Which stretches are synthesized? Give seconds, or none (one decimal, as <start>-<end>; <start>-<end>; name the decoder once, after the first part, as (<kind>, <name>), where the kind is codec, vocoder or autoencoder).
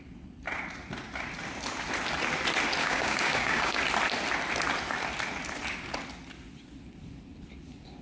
2.8-3.8 (codec, DAC)